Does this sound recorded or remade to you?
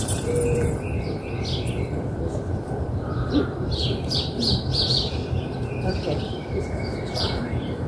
remade